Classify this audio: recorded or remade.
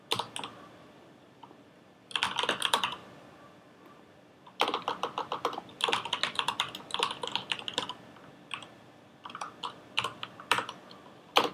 recorded